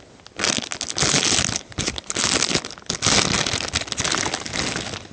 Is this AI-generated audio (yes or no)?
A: no